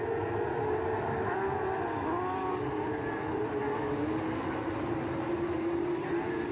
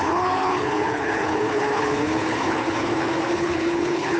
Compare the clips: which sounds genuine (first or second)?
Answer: first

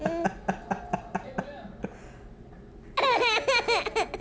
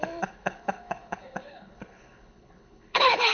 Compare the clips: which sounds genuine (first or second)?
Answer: first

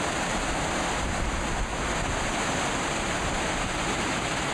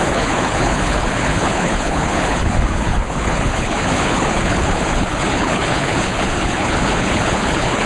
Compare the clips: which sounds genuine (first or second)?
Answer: first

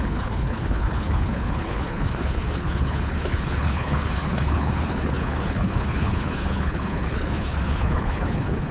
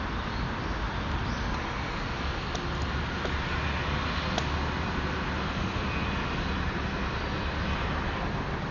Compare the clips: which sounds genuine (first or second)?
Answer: second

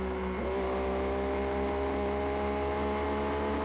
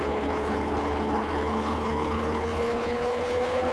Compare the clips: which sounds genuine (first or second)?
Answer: first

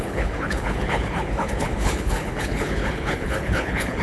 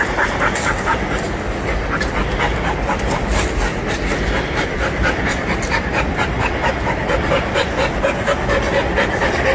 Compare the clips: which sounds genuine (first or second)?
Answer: second